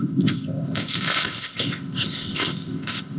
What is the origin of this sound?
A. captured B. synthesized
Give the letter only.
B